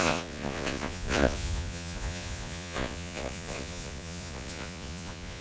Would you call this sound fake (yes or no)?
yes